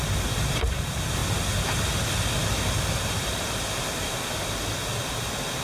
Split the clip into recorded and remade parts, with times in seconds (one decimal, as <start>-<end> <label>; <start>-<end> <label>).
0.0-5.6 recorded